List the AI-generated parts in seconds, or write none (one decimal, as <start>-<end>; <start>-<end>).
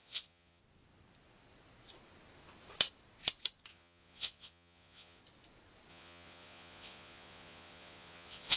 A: 0.0-0.6; 3.7-5.2; 5.9-8.6